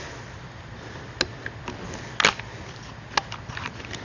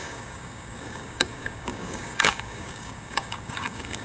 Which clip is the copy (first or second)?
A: second